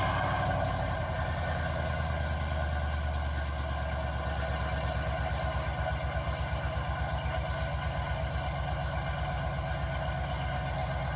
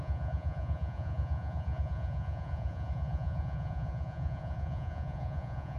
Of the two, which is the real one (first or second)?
first